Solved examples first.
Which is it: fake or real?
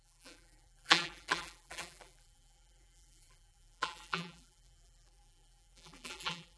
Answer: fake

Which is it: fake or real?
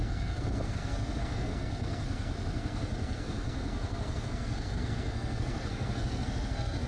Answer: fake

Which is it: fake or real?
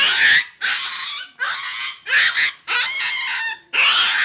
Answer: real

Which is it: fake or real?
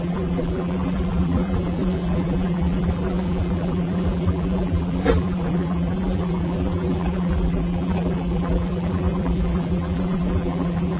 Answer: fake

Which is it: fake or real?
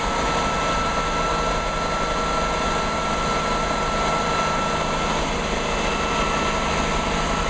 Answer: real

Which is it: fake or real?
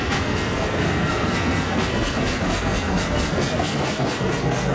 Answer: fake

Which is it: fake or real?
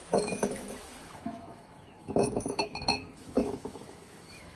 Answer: fake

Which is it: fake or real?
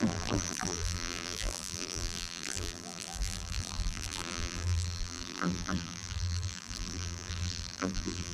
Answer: fake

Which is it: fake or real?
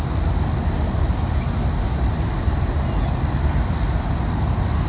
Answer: real